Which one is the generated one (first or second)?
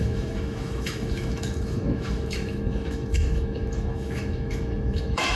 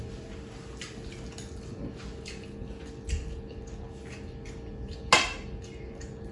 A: first